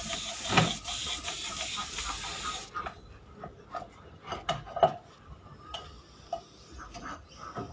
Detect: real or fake real